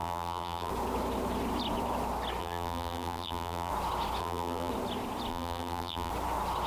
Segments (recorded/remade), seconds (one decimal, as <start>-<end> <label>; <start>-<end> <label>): 0.0-0.7 remade; 0.7-2.4 recorded; 2.4-3.7 remade; 3.7-4.2 recorded; 4.2-4.7 remade; 4.7-5.3 recorded; 5.3-6.1 remade; 6.1-6.7 recorded